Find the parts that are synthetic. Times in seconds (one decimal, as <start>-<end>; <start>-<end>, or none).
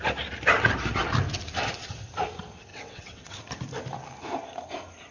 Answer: 2.7-3.4